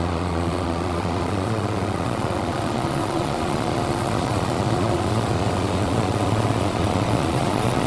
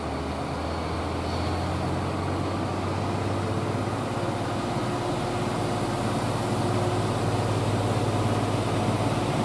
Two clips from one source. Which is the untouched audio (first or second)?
second